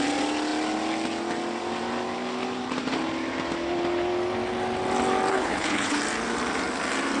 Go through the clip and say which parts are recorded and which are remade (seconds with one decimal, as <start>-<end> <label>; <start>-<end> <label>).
0.0-5.3 recorded; 5.3-6.0 remade; 6.0-7.2 recorded